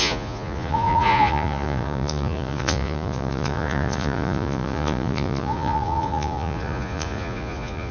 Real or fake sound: fake